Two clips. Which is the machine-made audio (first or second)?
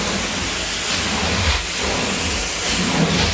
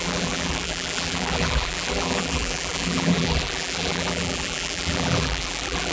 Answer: second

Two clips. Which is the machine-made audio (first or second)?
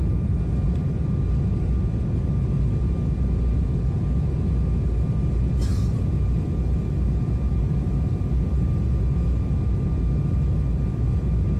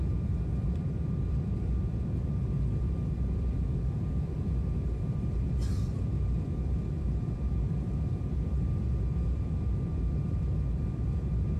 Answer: second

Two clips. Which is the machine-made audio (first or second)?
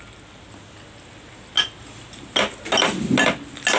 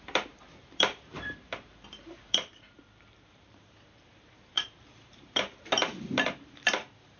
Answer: second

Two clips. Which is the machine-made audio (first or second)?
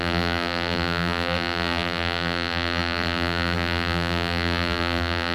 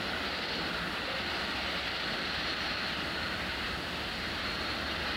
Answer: first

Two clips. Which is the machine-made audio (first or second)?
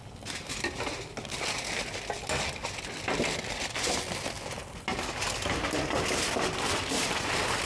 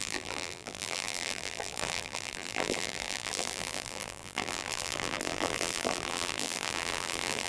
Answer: second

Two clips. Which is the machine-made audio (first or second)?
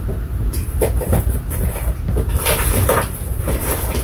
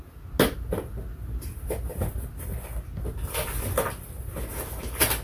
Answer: first